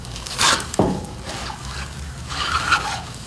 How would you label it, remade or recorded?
remade